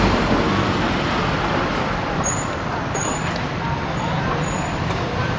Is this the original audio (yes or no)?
no